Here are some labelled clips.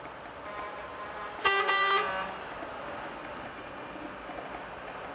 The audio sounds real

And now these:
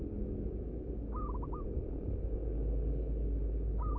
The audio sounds real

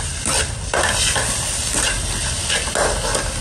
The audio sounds real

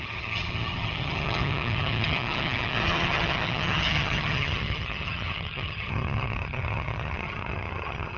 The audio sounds fake